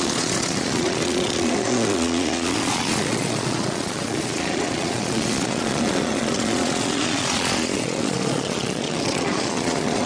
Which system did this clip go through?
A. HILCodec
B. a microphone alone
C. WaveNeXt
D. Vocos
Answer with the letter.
D